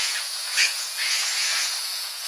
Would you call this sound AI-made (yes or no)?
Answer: yes